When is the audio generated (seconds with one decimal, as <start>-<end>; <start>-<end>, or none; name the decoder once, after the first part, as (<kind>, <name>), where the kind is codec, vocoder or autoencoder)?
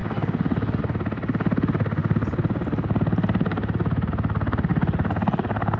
4.7-5.8 (vocoder, BigVGAN v2)